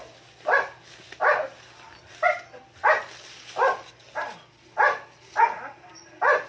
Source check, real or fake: real